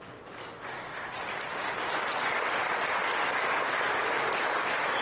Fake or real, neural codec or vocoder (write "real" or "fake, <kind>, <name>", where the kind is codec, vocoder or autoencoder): real